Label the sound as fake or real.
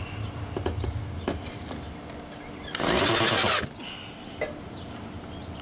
real